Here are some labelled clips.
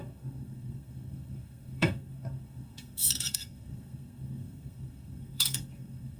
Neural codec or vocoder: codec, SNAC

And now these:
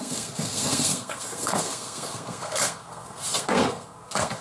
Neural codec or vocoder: codec, SNAC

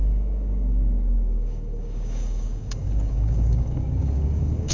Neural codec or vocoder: codec, DAC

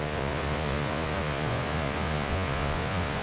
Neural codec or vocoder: vocoder, Vocos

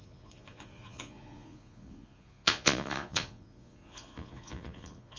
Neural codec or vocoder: vocoder, Vocos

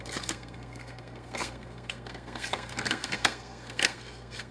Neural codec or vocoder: codec, SNAC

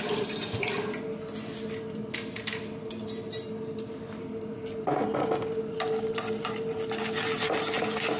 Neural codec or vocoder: none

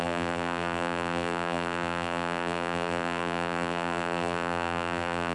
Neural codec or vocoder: vocoder, BigVGAN v2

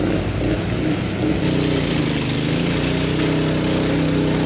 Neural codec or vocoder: none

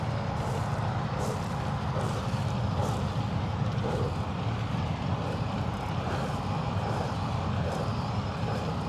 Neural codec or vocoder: vocoder, BigVGAN v2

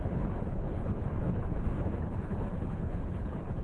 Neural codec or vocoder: codec, HILCodec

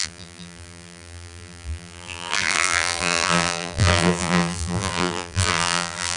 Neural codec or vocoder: vocoder, BigVGAN v2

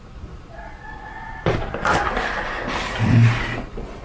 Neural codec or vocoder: none